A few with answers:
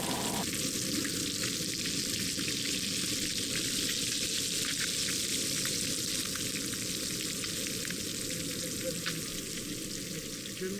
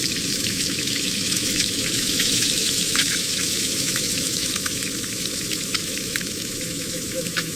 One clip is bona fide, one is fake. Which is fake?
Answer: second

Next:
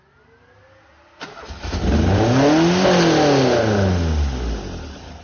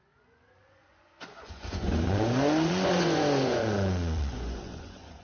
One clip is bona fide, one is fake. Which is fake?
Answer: second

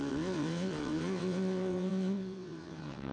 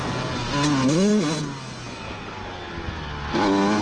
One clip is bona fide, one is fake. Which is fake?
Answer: first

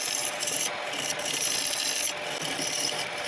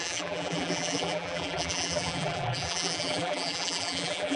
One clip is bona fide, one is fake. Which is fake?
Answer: second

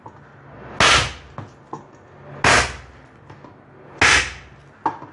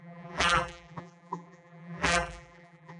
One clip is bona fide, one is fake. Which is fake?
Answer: second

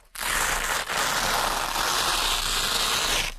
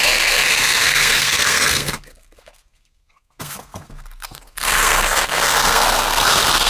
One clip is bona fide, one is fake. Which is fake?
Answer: second